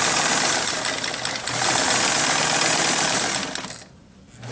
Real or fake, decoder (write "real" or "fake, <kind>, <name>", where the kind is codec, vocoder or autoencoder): real